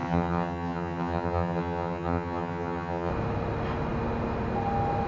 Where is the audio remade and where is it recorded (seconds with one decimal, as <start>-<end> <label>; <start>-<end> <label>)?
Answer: 0.0-3.1 remade; 3.1-5.1 recorded